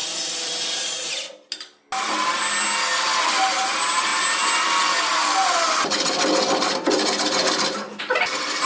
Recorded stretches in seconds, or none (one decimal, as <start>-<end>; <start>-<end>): 1.1-8.7